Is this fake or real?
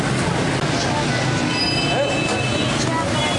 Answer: real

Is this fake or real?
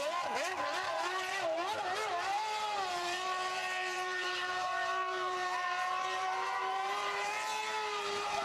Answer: fake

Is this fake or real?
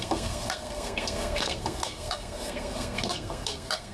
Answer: fake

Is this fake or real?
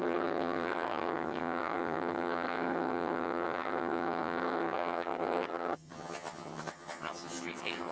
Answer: fake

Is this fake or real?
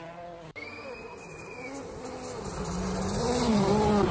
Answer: real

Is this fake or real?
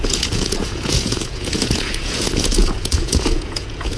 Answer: fake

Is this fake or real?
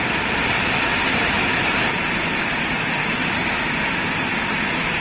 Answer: real